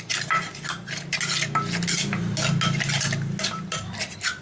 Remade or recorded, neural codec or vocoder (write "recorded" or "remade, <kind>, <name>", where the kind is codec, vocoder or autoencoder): recorded